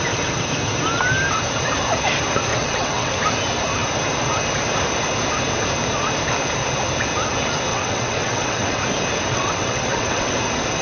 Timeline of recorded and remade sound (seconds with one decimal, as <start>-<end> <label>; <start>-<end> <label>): 0.0-2.5 recorded; 2.5-3.1 remade; 3.1-7.7 recorded; 7.7-8.8 remade; 8.8-9.3 recorded; 9.3-10.4 remade; 10.4-10.8 recorded